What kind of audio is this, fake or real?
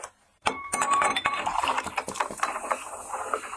fake